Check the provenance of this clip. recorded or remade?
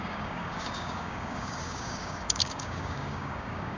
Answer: remade